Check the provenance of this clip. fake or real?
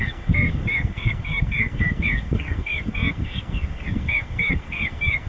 fake